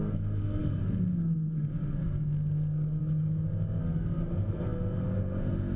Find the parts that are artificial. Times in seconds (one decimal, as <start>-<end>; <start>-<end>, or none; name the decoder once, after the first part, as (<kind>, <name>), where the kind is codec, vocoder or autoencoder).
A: 0.0-3.0 (codec, SNAC); 3.8-5.8